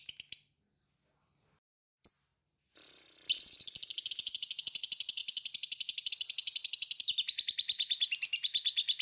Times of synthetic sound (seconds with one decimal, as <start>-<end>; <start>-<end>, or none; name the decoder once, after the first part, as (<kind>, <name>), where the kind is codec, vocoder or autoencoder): none